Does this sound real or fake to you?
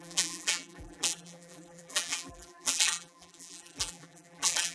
fake